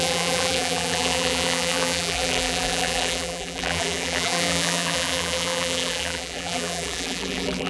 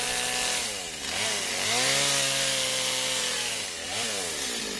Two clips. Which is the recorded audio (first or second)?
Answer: second